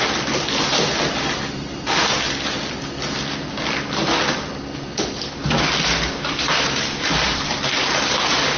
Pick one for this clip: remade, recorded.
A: recorded